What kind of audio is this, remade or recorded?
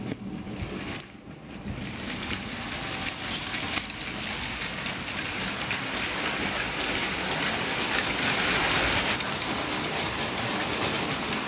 recorded